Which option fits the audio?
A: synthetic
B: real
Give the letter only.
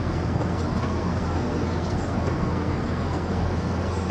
A